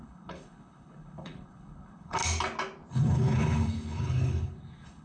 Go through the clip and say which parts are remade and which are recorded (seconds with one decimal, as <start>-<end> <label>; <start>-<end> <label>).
0.0-2.2 remade; 2.2-2.9 recorded; 2.9-5.0 remade